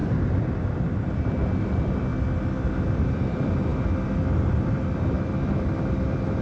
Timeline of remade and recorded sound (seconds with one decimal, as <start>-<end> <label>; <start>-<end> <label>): 0.0-2.1 remade; 2.1-2.9 recorded; 2.9-3.7 remade; 3.7-4.5 recorded; 4.5-6.4 remade